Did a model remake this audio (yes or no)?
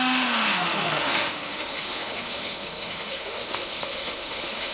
yes